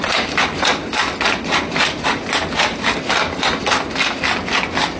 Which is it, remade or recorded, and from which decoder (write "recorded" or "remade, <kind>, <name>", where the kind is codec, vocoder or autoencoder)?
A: recorded